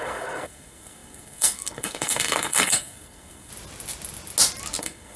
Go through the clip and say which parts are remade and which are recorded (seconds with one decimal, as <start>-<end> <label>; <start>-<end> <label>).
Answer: 0.0-3.5 remade; 3.5-4.8 recorded; 4.8-5.2 remade